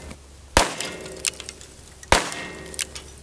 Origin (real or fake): real